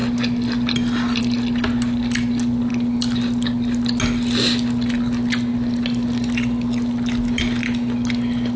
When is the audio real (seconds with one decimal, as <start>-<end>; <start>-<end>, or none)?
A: 0.0-8.6